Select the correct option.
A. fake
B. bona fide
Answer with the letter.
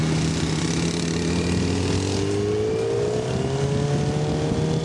B